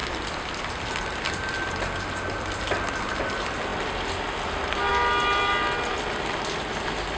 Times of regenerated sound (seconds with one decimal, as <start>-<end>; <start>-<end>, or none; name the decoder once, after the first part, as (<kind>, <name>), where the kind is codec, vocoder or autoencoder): none